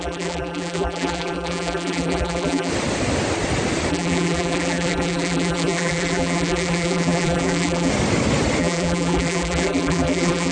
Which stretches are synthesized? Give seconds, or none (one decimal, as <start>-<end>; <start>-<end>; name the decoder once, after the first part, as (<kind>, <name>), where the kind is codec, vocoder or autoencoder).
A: 0.0-2.7 (vocoder, BigVGAN v2); 3.9-7.9; 8.6-10.5